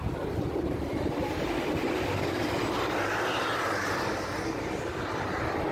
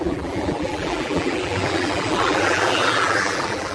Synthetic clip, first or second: second